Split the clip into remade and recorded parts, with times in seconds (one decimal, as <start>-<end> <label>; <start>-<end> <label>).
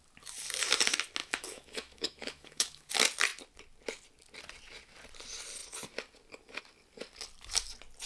0.0-1.2 recorded; 1.2-2.9 remade; 2.9-8.1 recorded